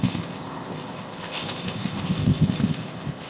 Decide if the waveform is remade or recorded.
remade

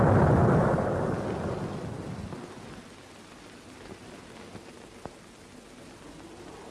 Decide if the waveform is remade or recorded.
recorded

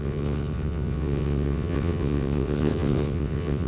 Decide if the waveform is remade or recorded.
remade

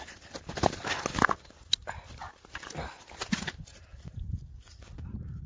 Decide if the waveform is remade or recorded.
recorded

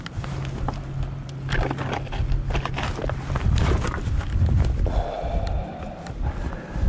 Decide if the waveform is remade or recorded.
recorded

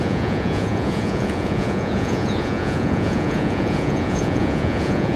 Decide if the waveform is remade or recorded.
remade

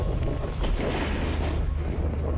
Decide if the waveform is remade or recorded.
recorded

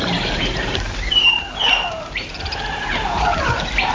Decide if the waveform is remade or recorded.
remade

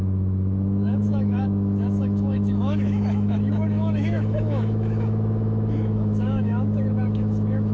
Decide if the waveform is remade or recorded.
remade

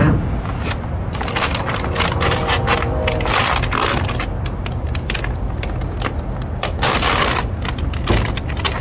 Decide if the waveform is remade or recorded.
recorded